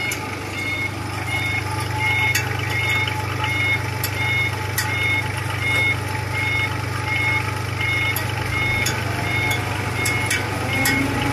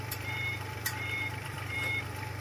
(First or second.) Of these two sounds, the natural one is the first